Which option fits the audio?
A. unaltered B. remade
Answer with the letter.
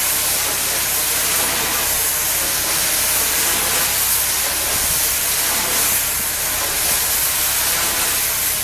A